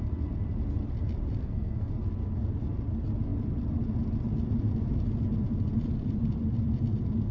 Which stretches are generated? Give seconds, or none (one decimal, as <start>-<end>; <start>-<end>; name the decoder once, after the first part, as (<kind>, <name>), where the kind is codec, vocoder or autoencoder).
1.4-1.9 (codec, SNAC)

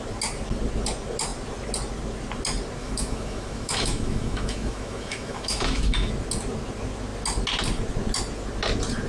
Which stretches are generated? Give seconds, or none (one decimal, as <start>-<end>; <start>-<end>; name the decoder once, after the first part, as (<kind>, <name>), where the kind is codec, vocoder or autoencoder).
2.8-6.1 (autoencoder, DAC-VAE)

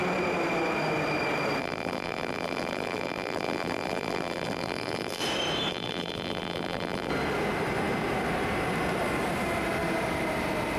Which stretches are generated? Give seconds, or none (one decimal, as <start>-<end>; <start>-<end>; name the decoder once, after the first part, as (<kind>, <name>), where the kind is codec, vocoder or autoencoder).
1.6-5.2 (vocoder, BigVGAN v2); 5.7-7.1

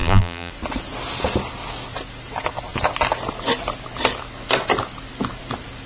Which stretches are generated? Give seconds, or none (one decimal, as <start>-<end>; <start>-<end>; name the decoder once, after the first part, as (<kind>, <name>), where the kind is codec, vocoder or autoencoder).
0.0-0.5 (vocoder, BigVGAN v2)

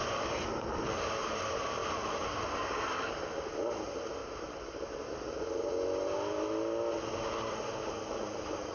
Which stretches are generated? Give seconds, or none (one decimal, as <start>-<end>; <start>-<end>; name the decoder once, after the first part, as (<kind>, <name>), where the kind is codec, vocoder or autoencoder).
1.8-3.0 (vocoder, BigVGAN v2); 4.2-4.8

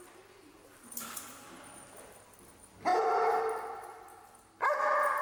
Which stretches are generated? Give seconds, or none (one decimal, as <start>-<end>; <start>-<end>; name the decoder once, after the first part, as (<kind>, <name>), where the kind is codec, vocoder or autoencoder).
0.7-1.4 (vocoder, BigVGAN v2)

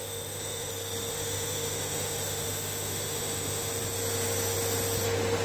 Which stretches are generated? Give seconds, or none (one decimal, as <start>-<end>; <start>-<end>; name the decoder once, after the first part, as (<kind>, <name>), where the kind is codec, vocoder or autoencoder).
0.0-0.7 (autoencoder, DAC-VAE); 1.1-3.7

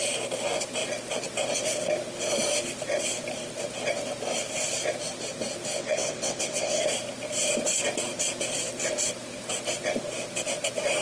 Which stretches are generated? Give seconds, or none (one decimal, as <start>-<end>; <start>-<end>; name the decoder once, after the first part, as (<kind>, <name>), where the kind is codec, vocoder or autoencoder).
5.7-6.8 (vocoder, WaveNeXt)